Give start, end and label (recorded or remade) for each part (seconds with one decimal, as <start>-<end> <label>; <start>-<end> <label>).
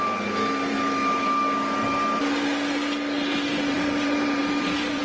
0.0-3.5 recorded; 3.5-5.0 remade